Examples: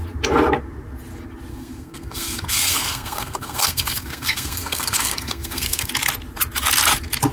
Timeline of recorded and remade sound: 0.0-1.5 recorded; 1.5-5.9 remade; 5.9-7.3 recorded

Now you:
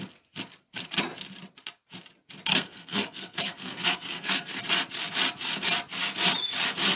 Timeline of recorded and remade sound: 0.0-2.5 recorded; 2.5-4.6 remade; 4.6-7.0 recorded

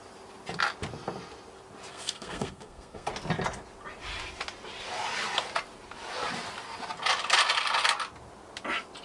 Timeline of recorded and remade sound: 0.0-1.9 recorded; 1.9-3.1 remade; 3.1-9.0 recorded

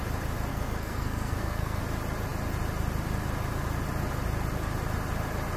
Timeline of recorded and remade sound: 0.0-0.5 recorded; 0.5-1.8 remade; 1.8-5.6 recorded

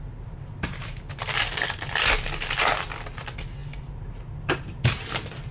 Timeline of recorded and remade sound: 0.0-5.5 recorded

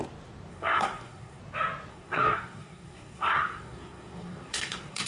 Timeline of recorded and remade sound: 0.0-0.5 recorded; 0.5-1.4 remade; 1.4-1.9 recorded; 1.9-5.1 remade

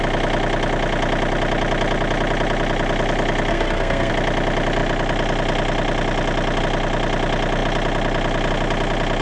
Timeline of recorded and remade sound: 0.0-3.5 recorded; 3.5-4.1 remade; 4.1-9.2 recorded